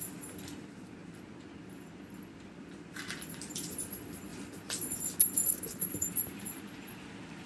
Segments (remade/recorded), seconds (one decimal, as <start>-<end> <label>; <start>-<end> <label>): 0.0-5.4 recorded; 5.4-6.6 remade; 6.6-7.5 recorded